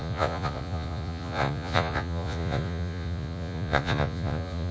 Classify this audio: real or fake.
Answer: fake